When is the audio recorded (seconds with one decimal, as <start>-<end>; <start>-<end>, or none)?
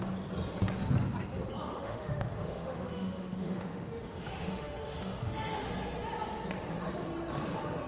0.0-1.7; 5.7-7.9